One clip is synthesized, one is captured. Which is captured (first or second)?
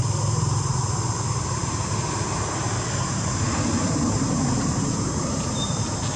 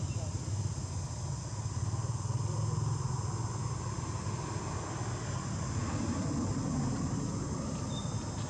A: second